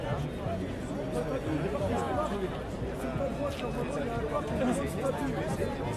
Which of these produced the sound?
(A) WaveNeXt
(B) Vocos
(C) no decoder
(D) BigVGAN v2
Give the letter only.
C